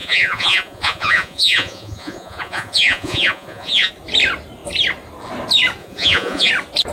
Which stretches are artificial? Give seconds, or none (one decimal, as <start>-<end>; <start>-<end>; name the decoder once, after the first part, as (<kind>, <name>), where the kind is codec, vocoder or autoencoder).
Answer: 0.0-3.9 (vocoder, Vocos); 5.8-6.5